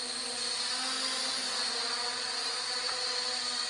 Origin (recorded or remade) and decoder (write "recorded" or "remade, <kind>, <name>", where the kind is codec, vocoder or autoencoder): recorded